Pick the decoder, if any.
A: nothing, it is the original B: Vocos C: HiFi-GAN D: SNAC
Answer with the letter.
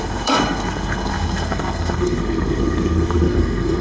D